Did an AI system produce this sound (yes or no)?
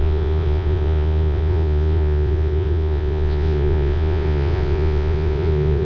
yes